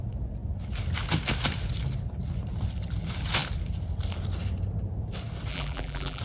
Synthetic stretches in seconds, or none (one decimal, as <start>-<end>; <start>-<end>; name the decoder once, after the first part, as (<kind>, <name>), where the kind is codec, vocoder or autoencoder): 5.5-6.2 (vocoder, BigVGAN v2)